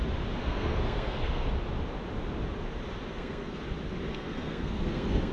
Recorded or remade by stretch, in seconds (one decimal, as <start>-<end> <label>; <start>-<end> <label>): 0.0-0.4 recorded; 0.4-1.5 remade; 1.5-3.1 recorded; 3.1-3.6 remade; 3.6-4.1 recorded; 4.1-5.3 remade